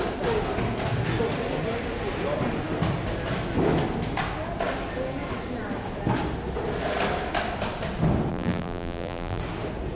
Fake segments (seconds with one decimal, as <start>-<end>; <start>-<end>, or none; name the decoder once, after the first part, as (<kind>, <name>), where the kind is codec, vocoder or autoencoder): 8.3-9.4 (vocoder, BigVGAN v2)